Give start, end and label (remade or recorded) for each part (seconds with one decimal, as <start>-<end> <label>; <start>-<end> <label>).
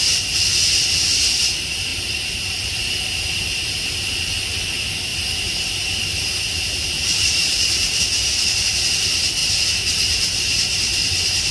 0.0-1.9 recorded; 1.9-3.9 remade; 3.9-5.1 recorded; 5.1-8.0 remade; 8.0-9.4 recorded; 9.4-11.5 remade